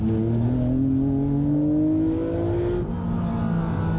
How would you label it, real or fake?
real